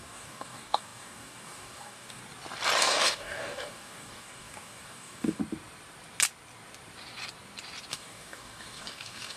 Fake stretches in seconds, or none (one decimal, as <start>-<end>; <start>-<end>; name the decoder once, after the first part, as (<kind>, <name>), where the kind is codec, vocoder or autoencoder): 0.0-2.2 (codec, DAC); 2.8-5.4; 7.9-9.4